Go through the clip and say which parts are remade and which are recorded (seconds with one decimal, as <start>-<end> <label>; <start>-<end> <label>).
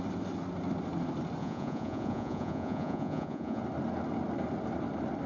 0.0-1.4 recorded; 1.4-3.6 remade; 3.6-5.3 recorded